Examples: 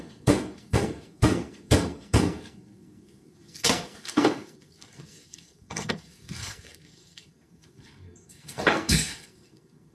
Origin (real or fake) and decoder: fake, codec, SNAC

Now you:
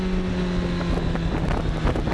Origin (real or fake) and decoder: real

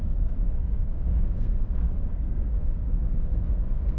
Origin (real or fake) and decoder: fake, codec, SNAC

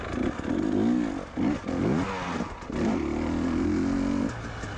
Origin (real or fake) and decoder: real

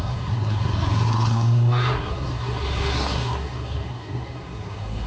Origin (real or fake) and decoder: fake, codec, SNAC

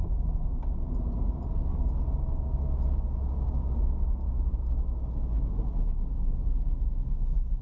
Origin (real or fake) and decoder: real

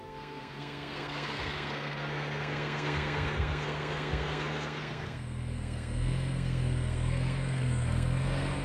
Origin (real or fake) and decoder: fake, codec, SNAC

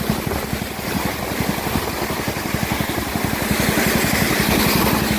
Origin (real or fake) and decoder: real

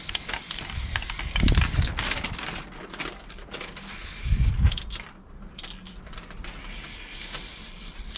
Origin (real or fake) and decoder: real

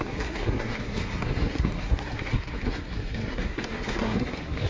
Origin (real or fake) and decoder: fake, codec, SNAC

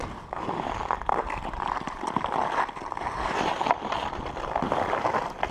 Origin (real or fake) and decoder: real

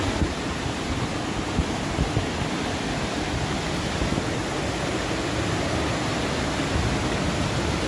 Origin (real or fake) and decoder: real